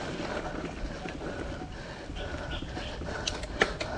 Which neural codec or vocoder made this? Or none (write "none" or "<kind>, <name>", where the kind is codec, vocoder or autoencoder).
none